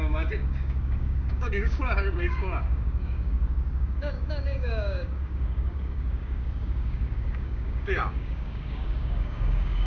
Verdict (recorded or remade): remade